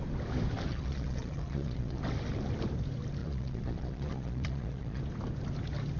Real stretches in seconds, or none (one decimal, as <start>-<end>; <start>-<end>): 0.0-0.7; 2.0-3.2; 5.0-6.0